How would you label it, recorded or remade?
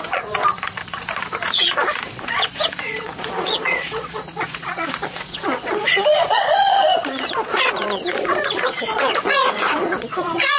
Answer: remade